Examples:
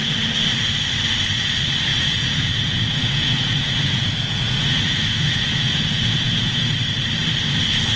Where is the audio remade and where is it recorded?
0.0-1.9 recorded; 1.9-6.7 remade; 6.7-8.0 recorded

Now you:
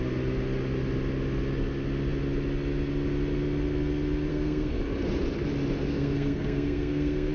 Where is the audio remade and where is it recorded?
0.0-4.3 recorded; 4.3-4.8 remade; 4.8-5.9 recorded; 5.9-7.3 remade

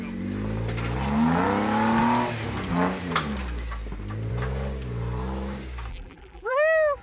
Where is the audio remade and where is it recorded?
0.0-5.9 recorded; 5.9-6.5 remade; 6.5-7.0 recorded

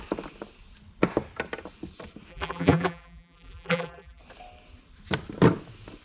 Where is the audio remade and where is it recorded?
0.0-2.3 recorded; 2.3-4.2 remade; 4.2-6.0 recorded

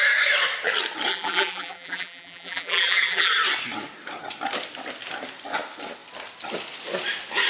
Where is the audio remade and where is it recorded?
0.0-1.1 recorded; 1.1-3.3 remade; 3.3-7.5 recorded